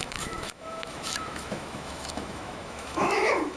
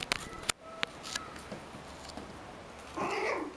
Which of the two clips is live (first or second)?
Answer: second